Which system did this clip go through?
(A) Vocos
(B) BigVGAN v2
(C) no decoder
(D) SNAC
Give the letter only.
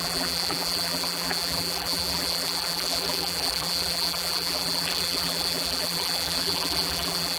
B